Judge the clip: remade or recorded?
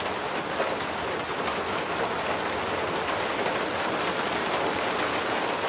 recorded